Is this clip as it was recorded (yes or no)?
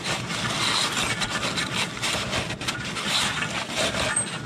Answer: yes